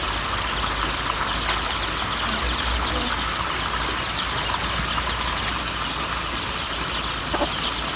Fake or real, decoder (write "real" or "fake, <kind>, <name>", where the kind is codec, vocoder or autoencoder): real